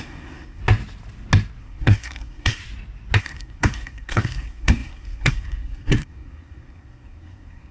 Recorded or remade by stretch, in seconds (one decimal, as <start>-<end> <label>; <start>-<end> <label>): 0.0-0.6 remade; 0.6-1.6 recorded; 1.6-2.6 remade; 2.6-3.2 recorded; 3.2-7.7 remade